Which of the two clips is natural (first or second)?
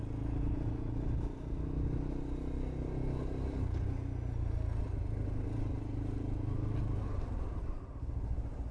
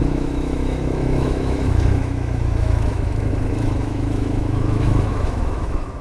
first